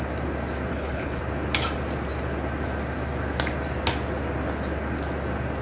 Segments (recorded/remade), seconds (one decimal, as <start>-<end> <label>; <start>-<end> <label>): 0.0-0.7 recorded; 0.7-1.2 remade; 1.2-5.6 recorded